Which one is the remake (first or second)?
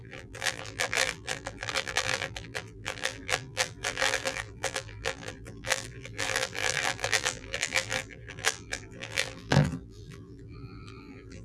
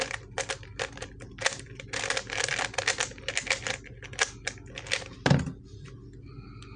first